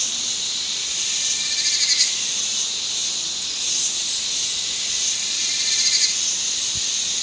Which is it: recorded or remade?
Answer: recorded